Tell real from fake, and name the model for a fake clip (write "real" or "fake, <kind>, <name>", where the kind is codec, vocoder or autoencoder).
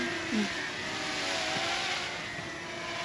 real